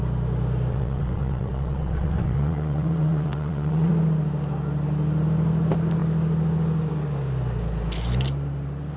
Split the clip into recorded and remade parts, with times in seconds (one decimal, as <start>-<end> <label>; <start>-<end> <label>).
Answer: 0.0-0.7 recorded; 0.7-3.9 remade; 3.9-9.0 recorded